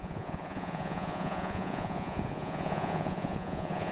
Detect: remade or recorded remade